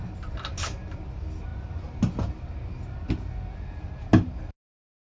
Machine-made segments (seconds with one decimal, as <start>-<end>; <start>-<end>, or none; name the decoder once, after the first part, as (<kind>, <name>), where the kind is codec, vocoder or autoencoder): none